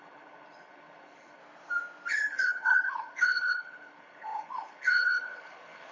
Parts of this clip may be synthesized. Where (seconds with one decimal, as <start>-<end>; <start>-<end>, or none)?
0.0-1.4; 2.1-5.9

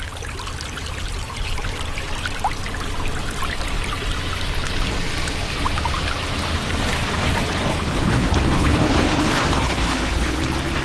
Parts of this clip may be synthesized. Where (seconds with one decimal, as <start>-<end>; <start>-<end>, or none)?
7.7-10.4